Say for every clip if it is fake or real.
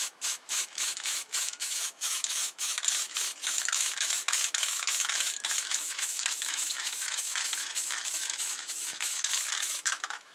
fake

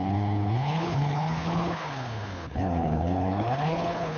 fake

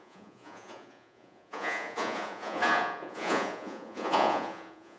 fake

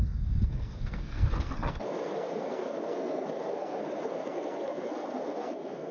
fake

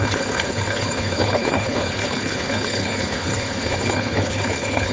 fake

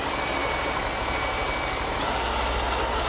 real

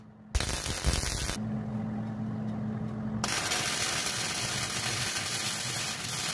real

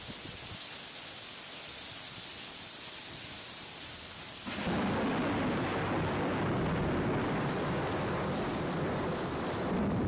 real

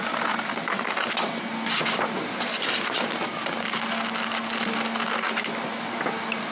real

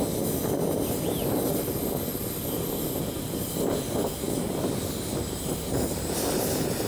real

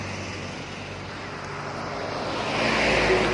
real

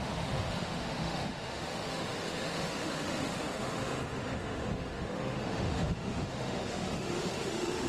fake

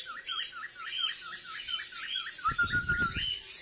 real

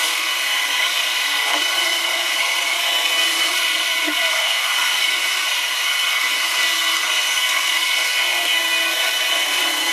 fake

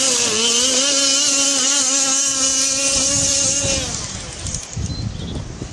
real